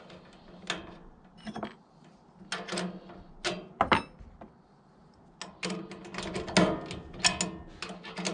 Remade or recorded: recorded